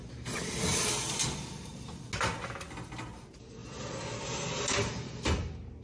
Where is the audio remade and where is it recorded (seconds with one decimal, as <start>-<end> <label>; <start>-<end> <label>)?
0.0-5.8 recorded